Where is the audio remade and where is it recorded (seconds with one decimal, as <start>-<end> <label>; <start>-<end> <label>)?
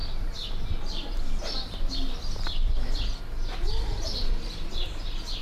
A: 0.0-3.2 remade; 3.2-3.9 recorded; 3.9-5.4 remade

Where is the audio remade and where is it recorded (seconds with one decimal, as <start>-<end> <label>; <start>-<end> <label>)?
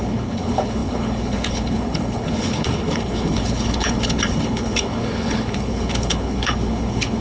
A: 0.0-7.2 remade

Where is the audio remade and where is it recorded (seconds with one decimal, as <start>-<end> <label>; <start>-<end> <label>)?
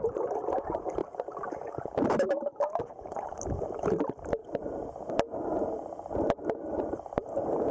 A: 0.0-4.4 remade; 4.4-5.1 recorded; 5.1-7.7 remade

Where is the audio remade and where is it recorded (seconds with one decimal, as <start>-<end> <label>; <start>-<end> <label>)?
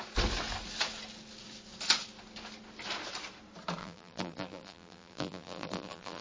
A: 0.0-3.8 recorded; 3.8-6.2 remade